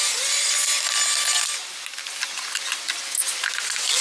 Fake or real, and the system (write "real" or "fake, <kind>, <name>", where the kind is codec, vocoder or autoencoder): real